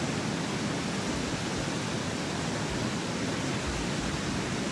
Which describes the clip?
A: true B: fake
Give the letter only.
A